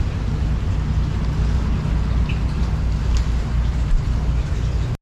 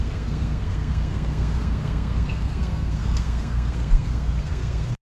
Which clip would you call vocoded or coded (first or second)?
second